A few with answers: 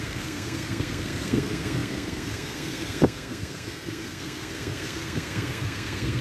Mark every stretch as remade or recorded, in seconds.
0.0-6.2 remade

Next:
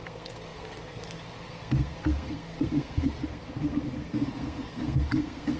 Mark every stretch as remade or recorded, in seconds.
0.0-5.6 remade

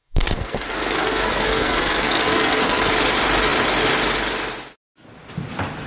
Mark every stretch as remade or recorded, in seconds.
0.0-2.9 remade; 2.9-5.9 recorded

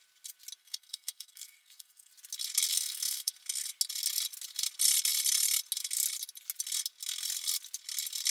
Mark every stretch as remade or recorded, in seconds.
0.0-0.6 recorded; 0.6-2.1 remade; 2.1-2.7 recorded; 2.7-3.3 remade; 3.3-8.3 recorded

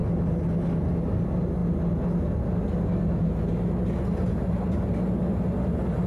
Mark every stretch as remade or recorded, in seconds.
0.0-6.1 recorded